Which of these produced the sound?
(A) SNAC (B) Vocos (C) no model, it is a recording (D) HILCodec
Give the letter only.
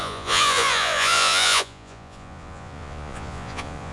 B